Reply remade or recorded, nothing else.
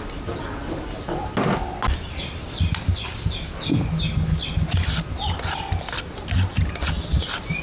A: recorded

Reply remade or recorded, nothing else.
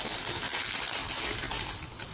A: recorded